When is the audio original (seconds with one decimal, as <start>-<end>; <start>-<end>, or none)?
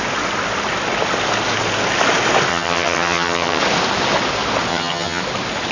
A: 0.0-2.5; 3.6-4.7; 5.2-5.7